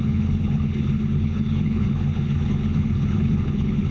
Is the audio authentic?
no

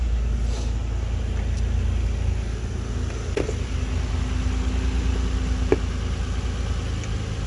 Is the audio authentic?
yes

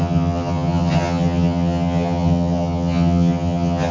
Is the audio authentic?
no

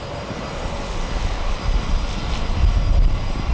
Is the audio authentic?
yes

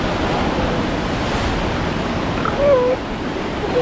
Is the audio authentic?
yes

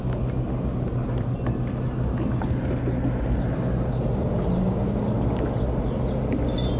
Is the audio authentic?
yes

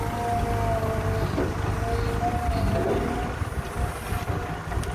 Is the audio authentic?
yes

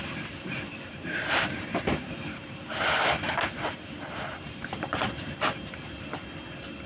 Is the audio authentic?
no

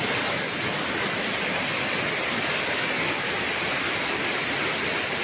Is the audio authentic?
yes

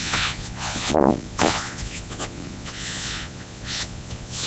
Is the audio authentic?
no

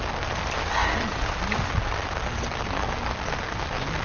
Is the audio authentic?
yes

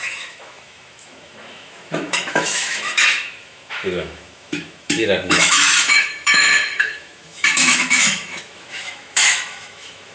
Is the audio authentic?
no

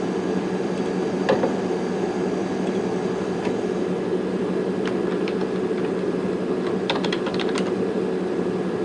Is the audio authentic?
yes